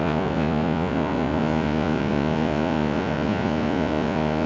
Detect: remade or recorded remade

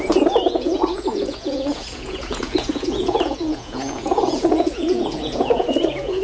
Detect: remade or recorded remade